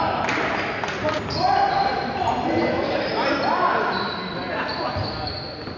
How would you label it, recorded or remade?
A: recorded